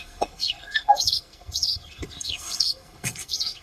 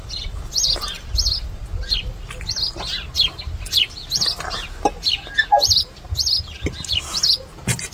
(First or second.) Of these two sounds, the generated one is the first